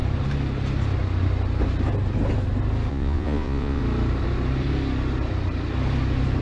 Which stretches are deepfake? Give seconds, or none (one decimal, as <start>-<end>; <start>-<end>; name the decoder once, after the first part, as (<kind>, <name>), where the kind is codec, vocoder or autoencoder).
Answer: 2.9-3.8 (vocoder, Vocos)